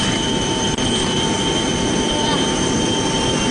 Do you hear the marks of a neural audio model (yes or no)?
no